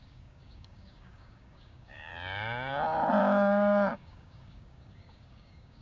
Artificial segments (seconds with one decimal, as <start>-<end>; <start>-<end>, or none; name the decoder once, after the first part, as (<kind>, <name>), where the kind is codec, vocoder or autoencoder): 0.0-2.1 (codec, DAC); 3.2-5.8